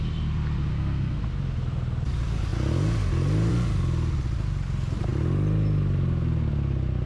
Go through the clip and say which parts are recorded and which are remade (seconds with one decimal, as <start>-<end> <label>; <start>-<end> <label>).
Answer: 0.0-0.7 recorded; 0.7-1.2 remade; 1.2-7.1 recorded